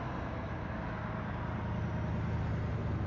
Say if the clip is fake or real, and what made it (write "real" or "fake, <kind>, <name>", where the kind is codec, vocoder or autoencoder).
real